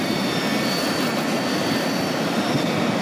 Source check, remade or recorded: recorded